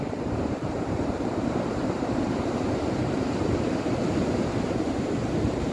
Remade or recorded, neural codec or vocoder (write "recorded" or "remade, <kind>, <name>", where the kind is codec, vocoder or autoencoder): remade, vocoder, BigVGAN v2